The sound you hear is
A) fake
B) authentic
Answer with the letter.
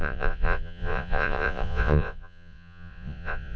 A